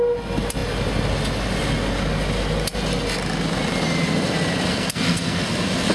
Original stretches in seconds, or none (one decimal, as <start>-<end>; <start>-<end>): 0.0-4.7; 5.4-5.9